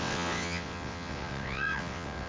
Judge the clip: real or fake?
fake